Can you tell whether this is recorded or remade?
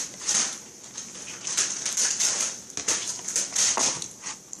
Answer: remade